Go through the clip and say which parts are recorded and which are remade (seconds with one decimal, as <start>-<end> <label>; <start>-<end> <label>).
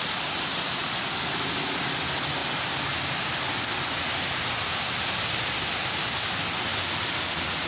0.0-0.8 remade; 0.8-2.4 recorded; 2.4-4.1 remade; 4.1-6.7 recorded; 6.7-7.7 remade